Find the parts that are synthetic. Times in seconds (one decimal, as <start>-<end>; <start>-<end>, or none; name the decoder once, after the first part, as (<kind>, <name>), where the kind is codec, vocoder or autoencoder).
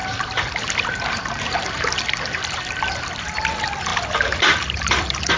3.2-5.4 (vocoder, BigVGAN v2)